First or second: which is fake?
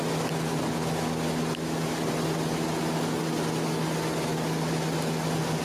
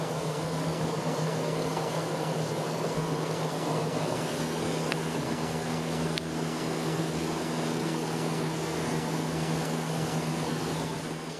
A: second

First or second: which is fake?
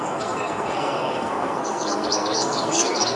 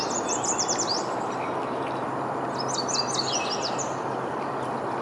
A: first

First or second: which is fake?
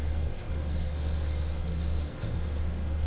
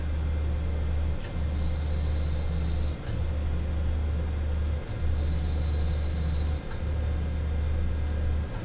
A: first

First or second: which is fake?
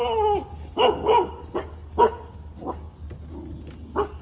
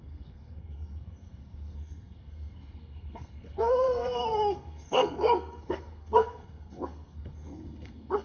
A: second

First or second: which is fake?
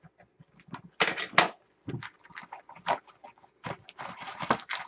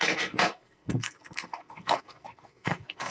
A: second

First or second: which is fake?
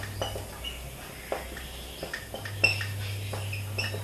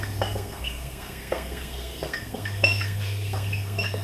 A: second